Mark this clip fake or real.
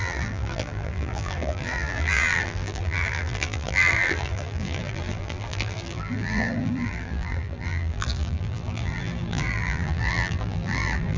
fake